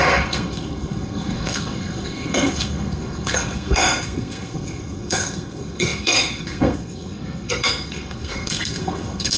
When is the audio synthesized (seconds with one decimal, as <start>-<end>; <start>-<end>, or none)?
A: 0.0-9.4

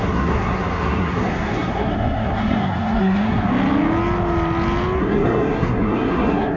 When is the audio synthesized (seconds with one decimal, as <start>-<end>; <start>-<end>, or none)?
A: 0.0-3.5; 5.0-6.6